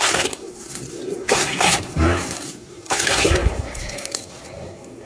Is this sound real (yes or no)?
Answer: no